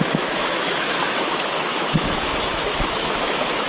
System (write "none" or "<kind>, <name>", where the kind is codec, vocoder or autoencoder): autoencoder, DAC-VAE